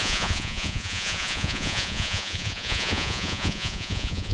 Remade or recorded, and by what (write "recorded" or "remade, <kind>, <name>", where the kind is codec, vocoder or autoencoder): remade, vocoder, Vocos